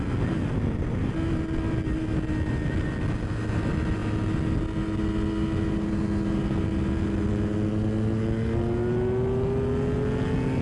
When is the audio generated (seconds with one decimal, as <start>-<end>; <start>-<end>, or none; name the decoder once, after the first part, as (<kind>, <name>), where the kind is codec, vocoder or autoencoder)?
none

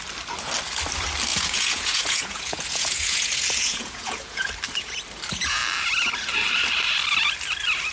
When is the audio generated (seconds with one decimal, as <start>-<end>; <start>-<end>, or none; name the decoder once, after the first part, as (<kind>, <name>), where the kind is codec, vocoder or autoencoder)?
1.3-4.5 (vocoder, Vocos)

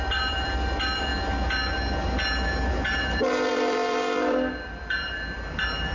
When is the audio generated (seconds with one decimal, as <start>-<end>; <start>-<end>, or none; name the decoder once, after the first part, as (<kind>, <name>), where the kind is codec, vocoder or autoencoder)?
0.0-1.1 (vocoder, BigVGAN v2); 2.7-5.9